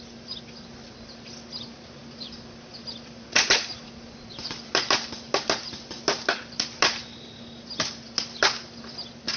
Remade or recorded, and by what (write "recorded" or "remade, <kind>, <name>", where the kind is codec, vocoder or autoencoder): recorded